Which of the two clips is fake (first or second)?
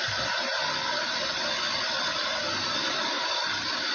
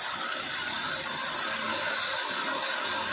second